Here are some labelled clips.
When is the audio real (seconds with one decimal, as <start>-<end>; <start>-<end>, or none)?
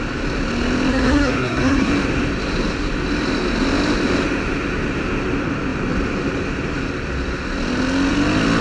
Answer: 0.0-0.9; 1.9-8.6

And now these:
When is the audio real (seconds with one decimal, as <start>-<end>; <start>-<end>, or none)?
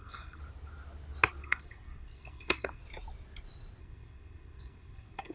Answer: 0.4-1.4; 2.8-3.8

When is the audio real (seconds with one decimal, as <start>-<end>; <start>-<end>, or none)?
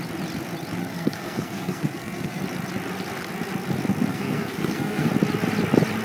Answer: 0.0-0.8; 2.4-4.1; 5.1-6.0